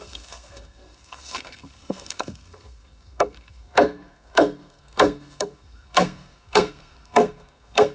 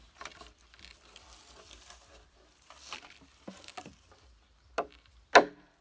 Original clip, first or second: second